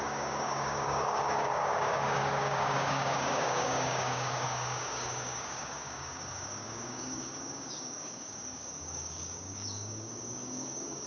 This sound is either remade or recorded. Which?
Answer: remade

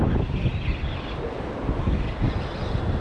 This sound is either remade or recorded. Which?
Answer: recorded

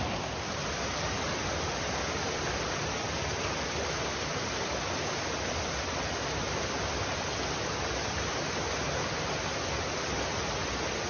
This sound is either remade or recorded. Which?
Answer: recorded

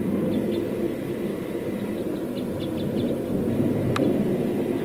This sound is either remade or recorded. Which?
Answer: recorded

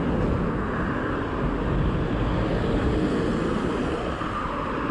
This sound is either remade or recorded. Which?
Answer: recorded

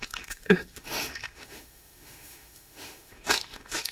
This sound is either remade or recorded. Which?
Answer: remade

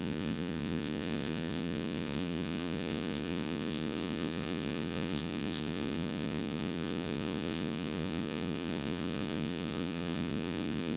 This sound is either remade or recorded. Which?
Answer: remade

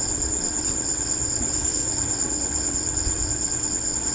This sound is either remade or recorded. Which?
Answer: remade